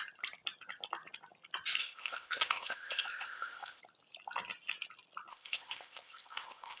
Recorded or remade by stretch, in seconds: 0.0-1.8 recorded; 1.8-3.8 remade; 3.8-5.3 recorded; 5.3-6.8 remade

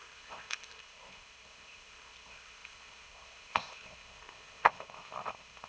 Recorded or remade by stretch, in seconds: 0.0-5.7 remade